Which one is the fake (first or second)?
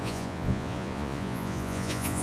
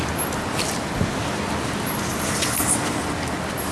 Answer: first